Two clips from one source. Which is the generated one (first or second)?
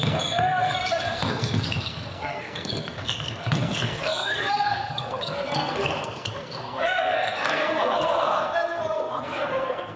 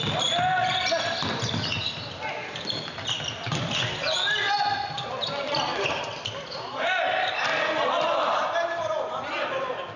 first